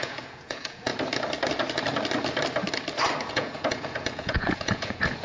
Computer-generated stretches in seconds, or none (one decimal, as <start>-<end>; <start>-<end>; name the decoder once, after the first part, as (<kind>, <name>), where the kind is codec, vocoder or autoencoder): 0.0-0.9 (vocoder, Vocos); 3.3-5.2